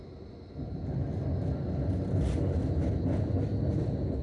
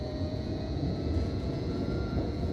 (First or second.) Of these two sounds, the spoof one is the second